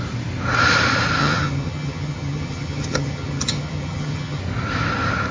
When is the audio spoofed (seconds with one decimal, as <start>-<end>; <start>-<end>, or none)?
1.2-4.4